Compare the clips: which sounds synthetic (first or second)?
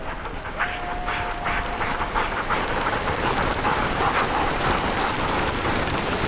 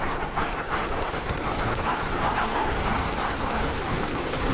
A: second